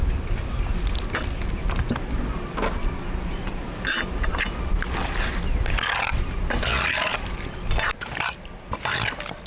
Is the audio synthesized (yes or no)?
no